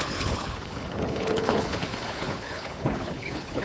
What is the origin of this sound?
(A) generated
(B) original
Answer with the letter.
A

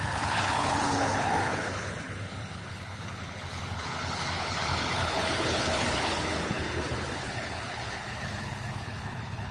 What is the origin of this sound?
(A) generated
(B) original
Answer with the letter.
A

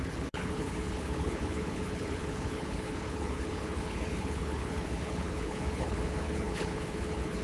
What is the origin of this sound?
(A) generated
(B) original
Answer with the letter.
A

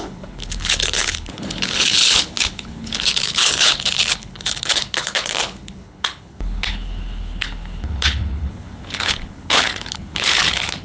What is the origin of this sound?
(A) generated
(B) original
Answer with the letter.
A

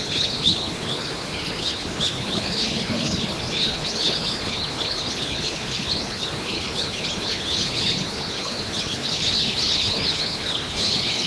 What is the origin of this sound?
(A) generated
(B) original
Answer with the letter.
A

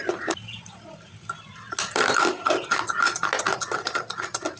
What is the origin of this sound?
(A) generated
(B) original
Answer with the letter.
B